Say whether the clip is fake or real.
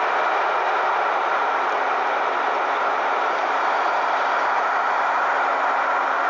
real